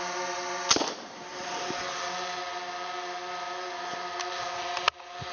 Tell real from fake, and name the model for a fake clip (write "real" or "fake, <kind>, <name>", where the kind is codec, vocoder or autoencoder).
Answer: real